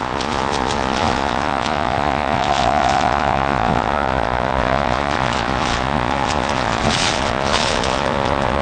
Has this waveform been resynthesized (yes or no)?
yes